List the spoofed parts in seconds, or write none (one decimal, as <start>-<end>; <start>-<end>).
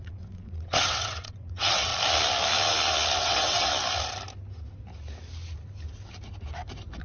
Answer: 0.0-1.9; 3.2-3.7